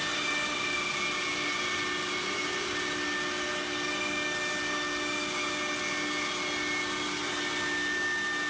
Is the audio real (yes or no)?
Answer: yes